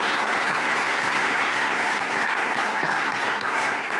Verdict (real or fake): fake